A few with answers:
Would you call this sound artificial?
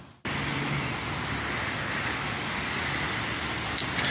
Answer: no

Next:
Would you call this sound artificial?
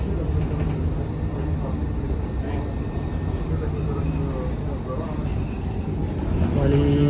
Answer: no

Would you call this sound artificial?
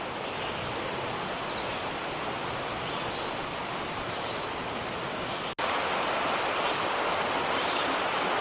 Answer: no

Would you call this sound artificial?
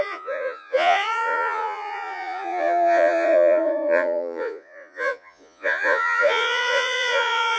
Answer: yes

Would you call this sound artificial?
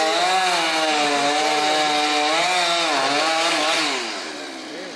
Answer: no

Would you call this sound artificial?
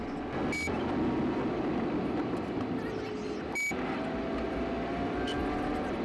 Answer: no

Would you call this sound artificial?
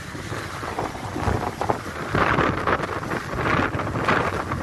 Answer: no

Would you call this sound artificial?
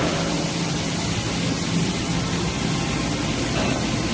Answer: no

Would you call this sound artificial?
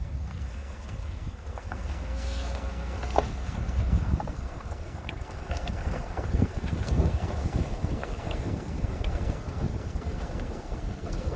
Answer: yes